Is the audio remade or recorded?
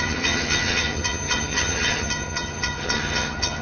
remade